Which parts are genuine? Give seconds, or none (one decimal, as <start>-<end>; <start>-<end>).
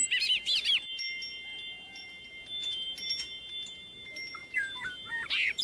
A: none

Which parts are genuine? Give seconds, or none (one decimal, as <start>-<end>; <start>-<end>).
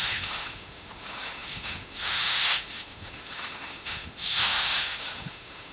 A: none